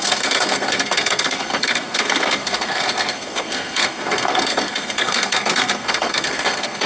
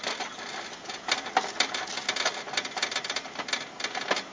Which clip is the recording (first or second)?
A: second